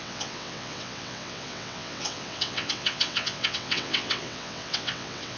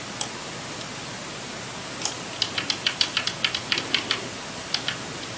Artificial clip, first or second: first